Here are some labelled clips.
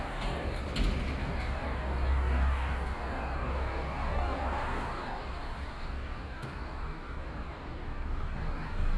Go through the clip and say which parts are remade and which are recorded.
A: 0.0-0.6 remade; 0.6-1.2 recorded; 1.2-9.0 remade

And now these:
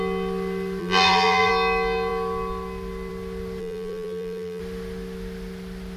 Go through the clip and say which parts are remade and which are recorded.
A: 0.0-0.8 recorded; 0.8-1.5 remade; 1.5-3.6 recorded; 3.6-4.6 remade; 4.6-6.0 recorded

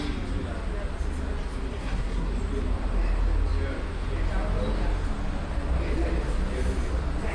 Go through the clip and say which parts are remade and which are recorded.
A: 0.0-1.7 recorded; 1.7-2.3 remade; 2.3-7.3 recorded

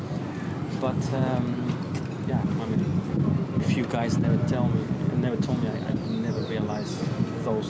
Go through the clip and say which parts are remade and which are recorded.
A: 0.0-1.1 recorded; 1.1-2.0 remade; 2.0-7.7 recorded

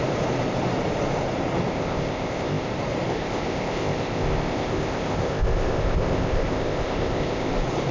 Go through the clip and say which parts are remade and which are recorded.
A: 0.0-1.7 recorded; 1.7-2.7 remade; 2.7-3.1 recorded; 3.1-7.5 remade; 7.5-7.9 recorded